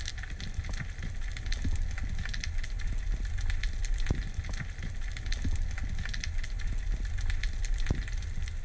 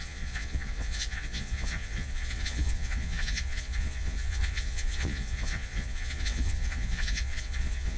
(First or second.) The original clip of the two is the first